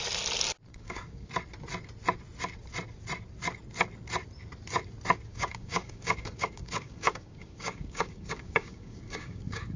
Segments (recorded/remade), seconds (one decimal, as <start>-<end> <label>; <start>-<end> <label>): 0.0-0.7 recorded; 0.7-1.3 remade; 1.3-5.3 recorded; 5.3-9.8 remade